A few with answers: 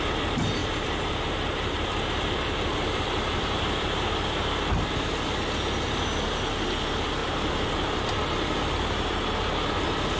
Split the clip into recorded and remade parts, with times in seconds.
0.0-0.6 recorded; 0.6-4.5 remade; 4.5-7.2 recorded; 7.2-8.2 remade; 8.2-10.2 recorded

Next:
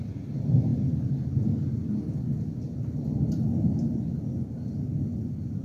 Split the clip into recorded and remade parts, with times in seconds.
0.0-5.6 recorded

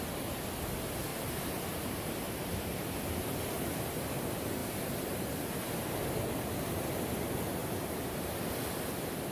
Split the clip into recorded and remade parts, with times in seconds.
0.0-1.1 recorded; 1.1-2.7 remade; 2.7-7.6 recorded; 7.6-8.5 remade; 8.5-9.3 recorded

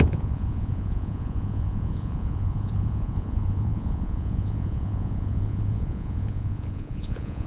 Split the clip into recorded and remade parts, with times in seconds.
0.0-7.5 remade

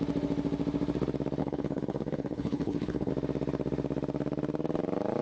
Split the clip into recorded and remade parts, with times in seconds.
0.0-1.4 recorded; 1.4-3.1 remade; 3.1-5.2 recorded

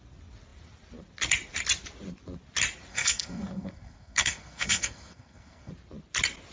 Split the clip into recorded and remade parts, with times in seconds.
0.0-2.9 recorded; 2.9-5.7 remade; 5.7-6.5 recorded

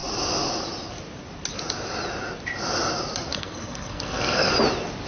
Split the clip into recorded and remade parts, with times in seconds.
0.0-3.3 recorded; 3.3-4.5 remade; 4.5-5.1 recorded